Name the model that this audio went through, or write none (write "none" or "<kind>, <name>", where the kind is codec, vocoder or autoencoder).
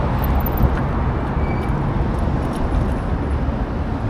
none